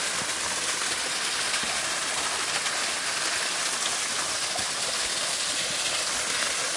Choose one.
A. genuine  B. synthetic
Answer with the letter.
A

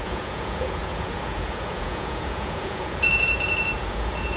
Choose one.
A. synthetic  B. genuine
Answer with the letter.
A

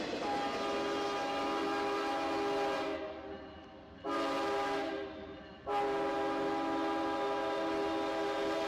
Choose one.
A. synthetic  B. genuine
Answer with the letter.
B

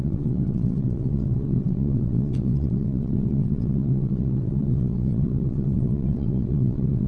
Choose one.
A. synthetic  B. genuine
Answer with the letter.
A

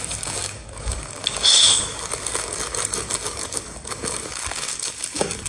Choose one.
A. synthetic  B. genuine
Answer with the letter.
A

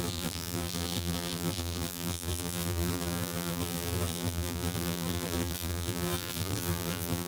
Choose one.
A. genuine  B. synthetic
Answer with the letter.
B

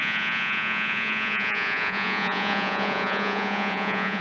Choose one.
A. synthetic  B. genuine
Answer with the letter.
A